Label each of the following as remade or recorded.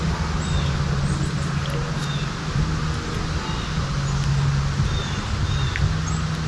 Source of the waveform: recorded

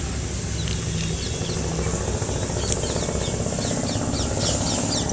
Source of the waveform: recorded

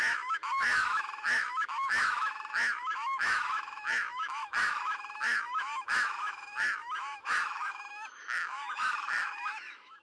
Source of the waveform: remade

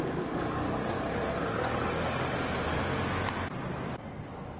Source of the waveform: recorded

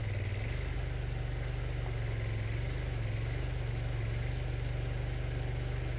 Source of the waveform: recorded